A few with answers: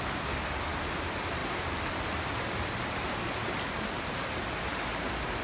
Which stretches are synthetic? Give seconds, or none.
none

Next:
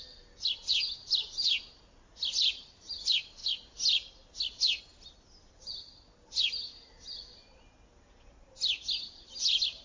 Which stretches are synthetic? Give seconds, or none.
none

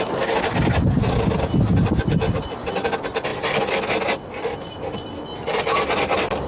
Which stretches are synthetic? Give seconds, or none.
none

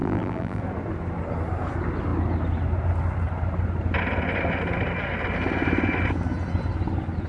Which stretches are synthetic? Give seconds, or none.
0.0-0.6 (vocoder, BigVGAN v2)